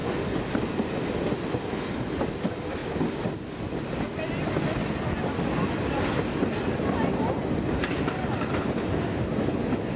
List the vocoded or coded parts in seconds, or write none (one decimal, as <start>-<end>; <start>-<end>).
none